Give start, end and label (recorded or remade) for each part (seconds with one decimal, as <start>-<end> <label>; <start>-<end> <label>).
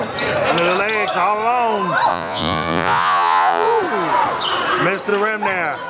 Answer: 0.0-2.1 recorded; 2.1-3.8 remade; 3.8-5.9 recorded